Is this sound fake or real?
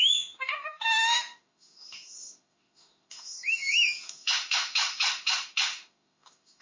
fake